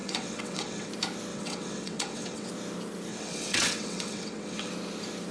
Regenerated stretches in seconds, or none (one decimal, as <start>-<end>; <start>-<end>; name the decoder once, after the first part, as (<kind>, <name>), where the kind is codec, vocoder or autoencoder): 0.0-0.9 (vocoder, WaveNeXt); 1.3-2.5; 3.1-4.7